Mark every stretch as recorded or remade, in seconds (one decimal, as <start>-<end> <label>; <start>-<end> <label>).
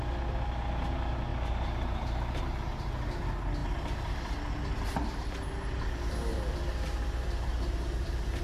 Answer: 0.0-1.3 recorded; 1.3-2.4 remade; 2.4-6.3 recorded; 6.3-8.4 remade